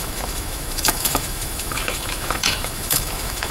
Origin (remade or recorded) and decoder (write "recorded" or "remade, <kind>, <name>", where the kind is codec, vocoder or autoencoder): remade, autoencoder, DAC-VAE